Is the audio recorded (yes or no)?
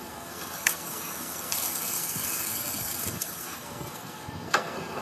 no